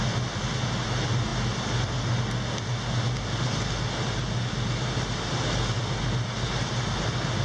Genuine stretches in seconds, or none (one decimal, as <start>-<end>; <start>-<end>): 0.0-7.4